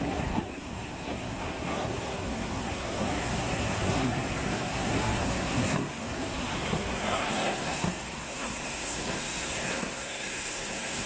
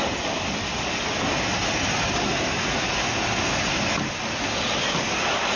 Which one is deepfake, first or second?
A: first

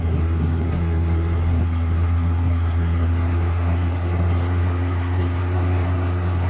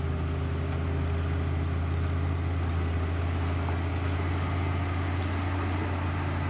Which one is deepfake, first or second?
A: first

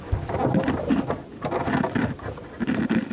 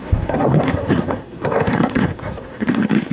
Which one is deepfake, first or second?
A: second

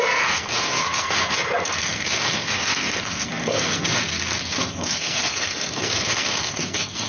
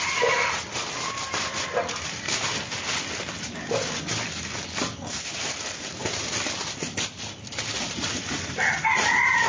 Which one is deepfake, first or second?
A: first